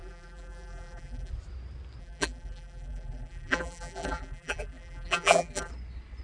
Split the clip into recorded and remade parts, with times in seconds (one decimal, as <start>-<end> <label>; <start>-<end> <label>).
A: 0.0-1.3 remade; 1.3-2.0 recorded; 2.0-5.7 remade; 5.7-6.2 recorded